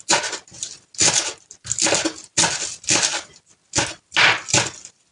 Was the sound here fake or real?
real